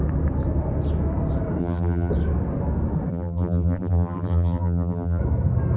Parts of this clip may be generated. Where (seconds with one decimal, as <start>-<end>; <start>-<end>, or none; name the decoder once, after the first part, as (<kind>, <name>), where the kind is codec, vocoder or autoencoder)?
1.6-2.1 (vocoder, BigVGAN v2); 3.1-5.2